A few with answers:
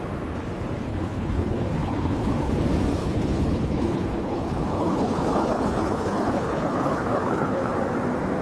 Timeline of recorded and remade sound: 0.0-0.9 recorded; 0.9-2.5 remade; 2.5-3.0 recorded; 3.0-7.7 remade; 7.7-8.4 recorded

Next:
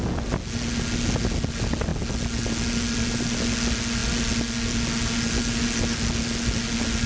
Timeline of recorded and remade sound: 0.0-7.1 recorded